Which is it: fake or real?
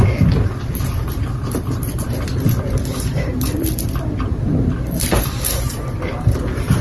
fake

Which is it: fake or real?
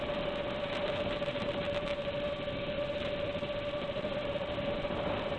fake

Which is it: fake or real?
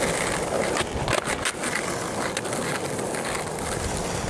real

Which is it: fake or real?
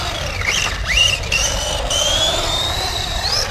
fake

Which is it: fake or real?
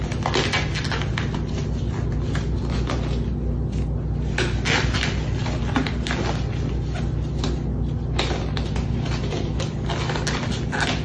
real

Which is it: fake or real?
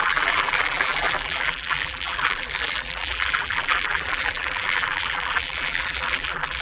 fake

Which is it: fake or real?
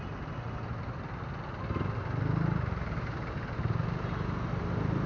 real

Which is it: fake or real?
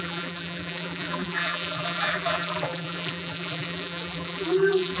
fake